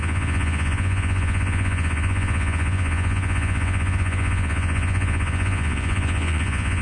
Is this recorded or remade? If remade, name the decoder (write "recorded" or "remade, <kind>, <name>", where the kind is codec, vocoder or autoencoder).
remade, vocoder, Vocos